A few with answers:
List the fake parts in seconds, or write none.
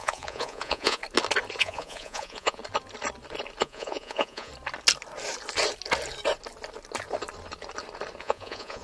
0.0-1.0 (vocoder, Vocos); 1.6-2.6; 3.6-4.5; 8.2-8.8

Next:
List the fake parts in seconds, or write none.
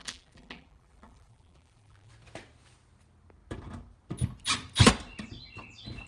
0.0-2.1 (vocoder, BigVGAN v2)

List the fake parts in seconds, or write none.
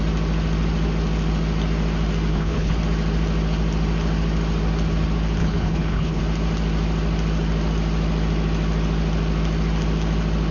2.3-2.8 (codec, HILCodec); 5.4-6.2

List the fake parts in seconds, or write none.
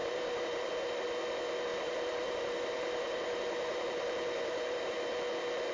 0.0-0.7 (vocoder, BigVGAN v2); 1.7-4.9